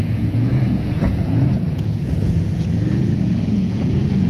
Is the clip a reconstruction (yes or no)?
yes